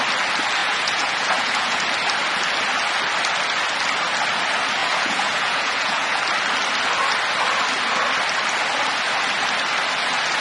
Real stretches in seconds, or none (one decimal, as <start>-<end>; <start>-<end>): 0.0-0.6; 1.8-4.8; 6.2-10.4